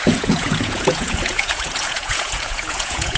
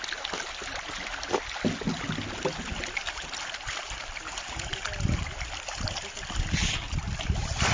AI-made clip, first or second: first